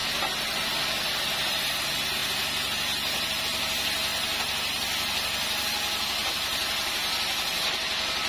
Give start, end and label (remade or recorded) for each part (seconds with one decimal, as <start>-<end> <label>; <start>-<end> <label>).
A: 0.0-8.3 recorded